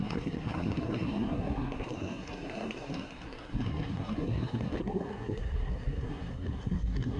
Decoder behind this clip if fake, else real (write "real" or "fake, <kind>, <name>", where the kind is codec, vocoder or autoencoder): fake, codec, SNAC